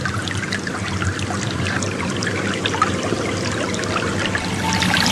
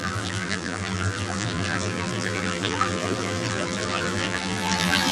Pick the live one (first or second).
first